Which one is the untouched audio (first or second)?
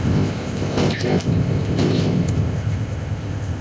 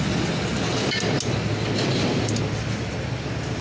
second